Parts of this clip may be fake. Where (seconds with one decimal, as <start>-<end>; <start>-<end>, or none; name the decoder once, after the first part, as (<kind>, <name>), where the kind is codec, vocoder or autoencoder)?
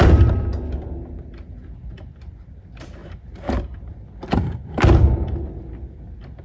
none